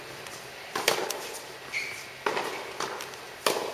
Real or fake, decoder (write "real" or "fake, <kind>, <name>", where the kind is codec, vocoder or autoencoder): real